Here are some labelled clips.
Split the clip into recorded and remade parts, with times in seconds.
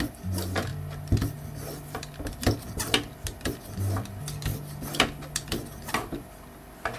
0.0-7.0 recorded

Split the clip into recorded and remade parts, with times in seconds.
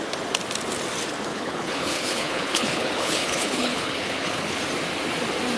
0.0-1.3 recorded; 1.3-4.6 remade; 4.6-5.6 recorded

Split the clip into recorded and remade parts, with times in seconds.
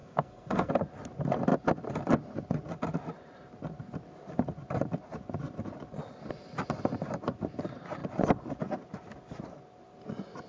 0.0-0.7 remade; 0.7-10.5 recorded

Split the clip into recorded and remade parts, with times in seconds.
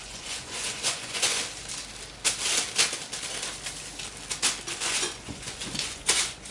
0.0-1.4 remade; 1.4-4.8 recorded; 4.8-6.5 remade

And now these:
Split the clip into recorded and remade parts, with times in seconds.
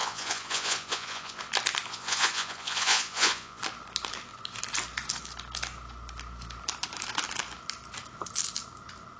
0.0-1.4 remade; 1.4-1.9 recorded; 1.9-3.6 remade; 3.6-9.2 recorded